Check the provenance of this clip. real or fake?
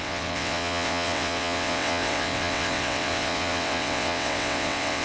fake